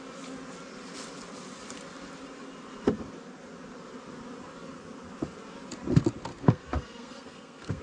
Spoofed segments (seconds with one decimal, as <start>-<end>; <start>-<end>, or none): 6.3-7.8